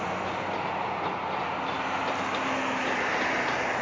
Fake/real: real